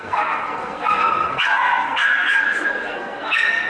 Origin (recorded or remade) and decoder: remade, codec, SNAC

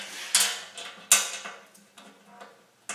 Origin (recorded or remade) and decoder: recorded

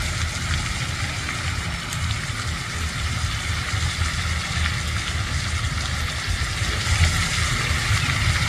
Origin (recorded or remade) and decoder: recorded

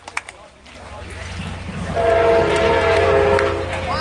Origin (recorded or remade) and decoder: recorded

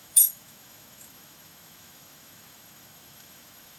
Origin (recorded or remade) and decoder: remade, autoencoder, DAC-VAE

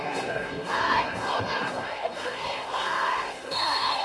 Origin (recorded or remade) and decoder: remade, codec, SNAC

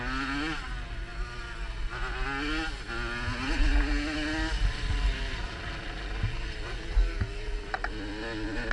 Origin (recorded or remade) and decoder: recorded